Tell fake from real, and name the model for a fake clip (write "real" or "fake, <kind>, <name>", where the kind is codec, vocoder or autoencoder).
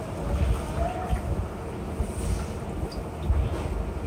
real